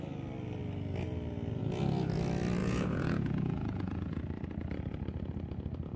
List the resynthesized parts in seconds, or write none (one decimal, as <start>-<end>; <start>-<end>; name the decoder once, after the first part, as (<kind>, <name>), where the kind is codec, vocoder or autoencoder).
2.6-4.2 (vocoder, Vocos)